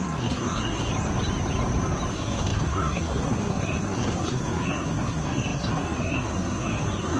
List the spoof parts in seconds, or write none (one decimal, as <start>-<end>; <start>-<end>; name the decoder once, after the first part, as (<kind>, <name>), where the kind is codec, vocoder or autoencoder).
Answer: 0.0-0.9 (codec, SNAC); 2.1-7.2